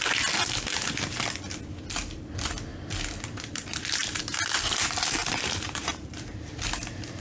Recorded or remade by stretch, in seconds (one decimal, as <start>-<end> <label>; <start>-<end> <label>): 0.0-2.7 recorded; 2.7-4.2 remade; 4.2-5.2 recorded; 5.2-6.5 remade; 6.5-7.2 recorded